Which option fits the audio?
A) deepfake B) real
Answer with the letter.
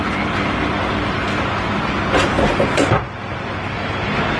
B